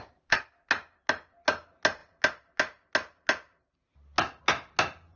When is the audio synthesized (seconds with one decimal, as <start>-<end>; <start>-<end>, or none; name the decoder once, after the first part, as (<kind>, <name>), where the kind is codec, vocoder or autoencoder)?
none